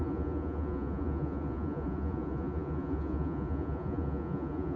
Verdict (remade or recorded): remade